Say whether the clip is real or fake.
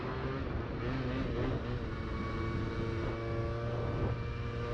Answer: real